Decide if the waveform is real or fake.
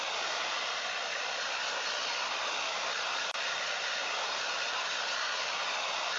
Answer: real